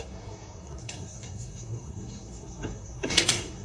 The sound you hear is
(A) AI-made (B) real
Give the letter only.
A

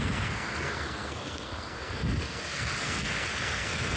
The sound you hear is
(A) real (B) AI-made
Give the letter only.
B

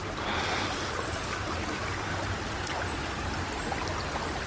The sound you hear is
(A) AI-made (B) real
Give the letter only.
B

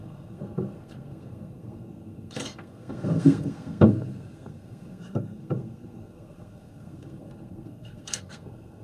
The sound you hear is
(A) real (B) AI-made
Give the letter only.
B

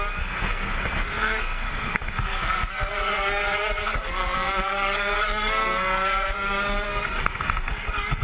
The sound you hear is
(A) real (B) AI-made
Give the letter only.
B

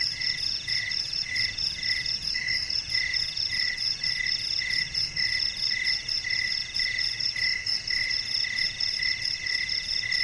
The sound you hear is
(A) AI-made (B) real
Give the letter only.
B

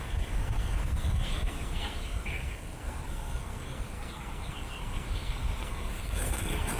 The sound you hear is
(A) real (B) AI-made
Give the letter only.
B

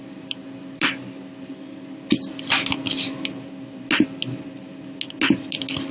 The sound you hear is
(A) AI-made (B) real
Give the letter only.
B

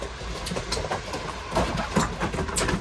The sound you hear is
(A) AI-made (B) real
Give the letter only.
B